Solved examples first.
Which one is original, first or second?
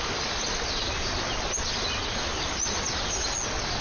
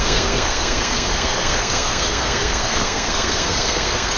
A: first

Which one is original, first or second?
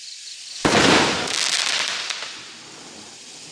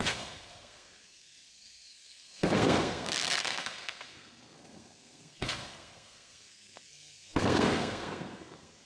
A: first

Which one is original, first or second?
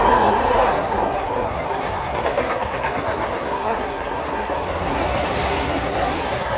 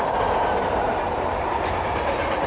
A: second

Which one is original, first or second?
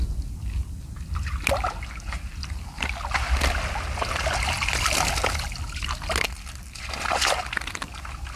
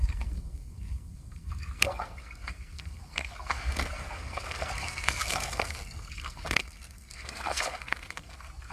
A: first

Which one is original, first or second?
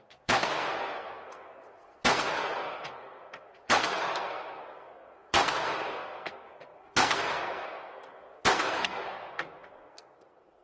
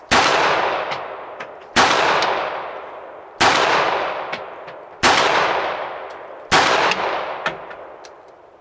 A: second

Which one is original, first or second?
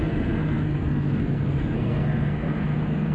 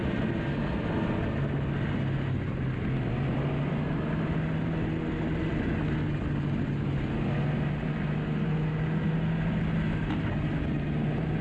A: second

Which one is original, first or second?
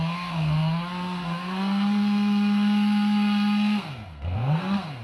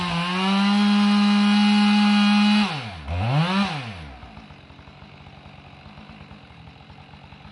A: second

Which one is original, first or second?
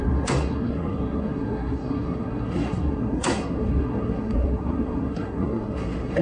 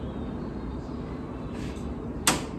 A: second